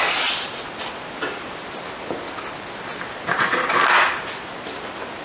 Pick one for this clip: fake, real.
real